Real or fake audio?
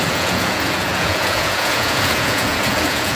fake